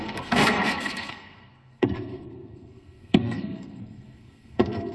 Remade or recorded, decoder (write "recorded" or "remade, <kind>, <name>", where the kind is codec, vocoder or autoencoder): remade, codec, SNAC